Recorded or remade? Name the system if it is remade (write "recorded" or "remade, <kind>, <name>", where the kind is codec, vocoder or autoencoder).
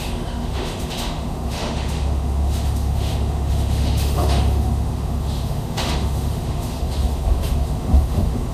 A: remade, autoencoder, DAC-VAE